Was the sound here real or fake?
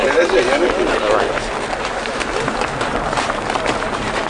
real